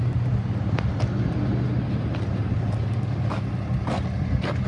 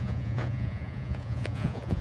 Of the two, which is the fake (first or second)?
second